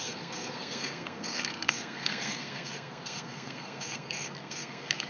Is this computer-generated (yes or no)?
yes